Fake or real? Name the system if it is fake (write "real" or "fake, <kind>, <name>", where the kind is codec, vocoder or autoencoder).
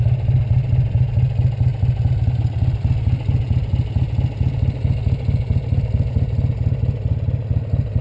real